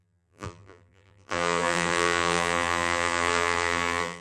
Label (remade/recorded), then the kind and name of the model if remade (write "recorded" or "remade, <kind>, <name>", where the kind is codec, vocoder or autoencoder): remade, vocoder, BigVGAN v2